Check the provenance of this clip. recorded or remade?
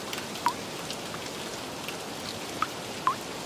recorded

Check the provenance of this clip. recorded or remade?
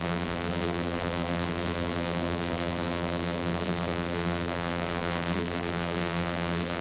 remade